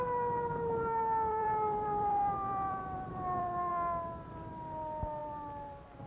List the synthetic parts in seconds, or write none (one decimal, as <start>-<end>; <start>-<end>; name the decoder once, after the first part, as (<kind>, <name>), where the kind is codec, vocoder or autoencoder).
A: 1.3-3.7 (vocoder, BigVGAN v2)